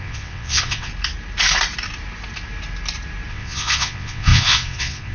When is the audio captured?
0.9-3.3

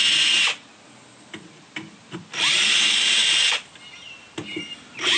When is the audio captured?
0.0-5.2

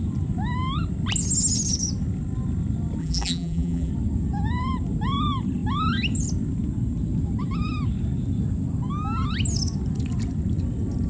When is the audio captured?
0.0-3.0; 3.9-11.1

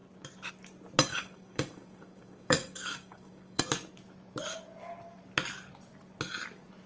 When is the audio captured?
0.0-1.1; 3.6-6.9

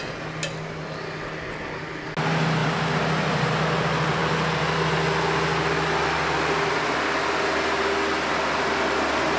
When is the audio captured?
0.0-2.6; 3.6-9.4

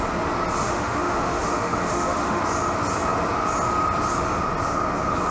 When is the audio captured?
0.0-0.6; 2.4-5.3

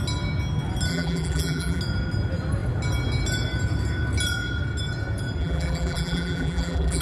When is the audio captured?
0.0-0.9; 1.8-5.4

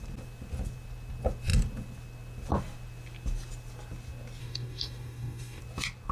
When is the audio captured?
0.0-4.4; 5.6-6.1